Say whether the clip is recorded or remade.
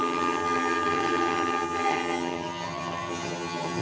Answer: remade